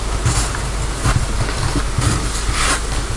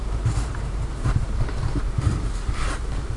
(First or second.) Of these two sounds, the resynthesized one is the second